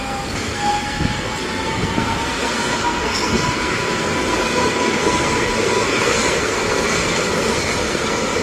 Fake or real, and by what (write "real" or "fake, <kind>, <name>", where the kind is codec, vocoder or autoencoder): fake, codec, SNAC